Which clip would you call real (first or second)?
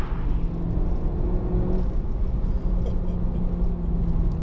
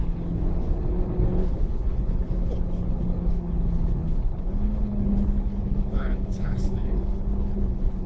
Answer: first